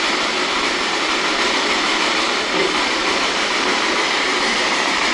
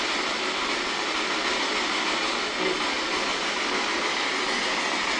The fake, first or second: first